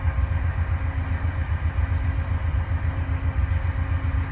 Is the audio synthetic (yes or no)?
no